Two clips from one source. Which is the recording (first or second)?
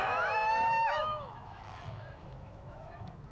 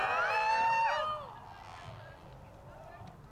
second